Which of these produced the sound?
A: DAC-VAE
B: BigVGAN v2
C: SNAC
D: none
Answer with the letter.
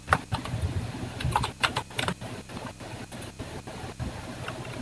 D